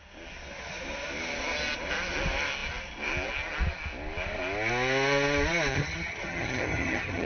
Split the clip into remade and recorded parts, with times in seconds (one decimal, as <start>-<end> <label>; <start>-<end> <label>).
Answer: 0.0-5.7 recorded; 5.7-7.3 remade